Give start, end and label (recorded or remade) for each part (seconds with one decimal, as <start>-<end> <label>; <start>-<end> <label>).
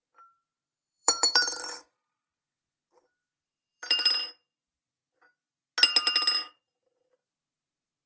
0.0-0.5 recorded; 0.5-2.4 remade; 2.4-3.3 recorded; 3.3-4.6 remade; 4.6-8.1 recorded